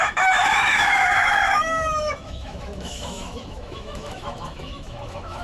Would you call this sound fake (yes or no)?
yes